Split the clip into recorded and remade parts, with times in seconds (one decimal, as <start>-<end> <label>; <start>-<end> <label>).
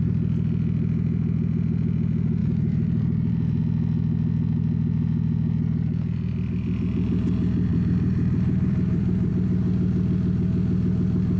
0.0-2.4 recorded; 2.4-3.6 remade; 3.6-7.7 recorded; 7.7-9.3 remade; 9.3-11.4 recorded